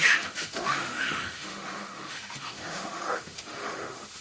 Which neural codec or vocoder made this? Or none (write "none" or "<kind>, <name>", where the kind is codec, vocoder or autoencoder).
autoencoder, DAC-VAE